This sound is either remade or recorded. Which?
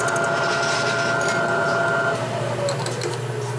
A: recorded